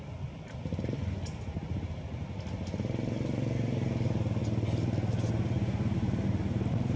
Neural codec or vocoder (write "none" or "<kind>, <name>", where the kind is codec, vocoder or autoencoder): none